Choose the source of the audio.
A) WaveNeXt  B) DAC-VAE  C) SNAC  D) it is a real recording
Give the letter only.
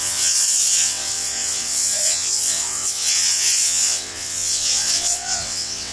A